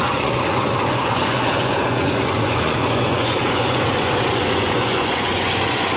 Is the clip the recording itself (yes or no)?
no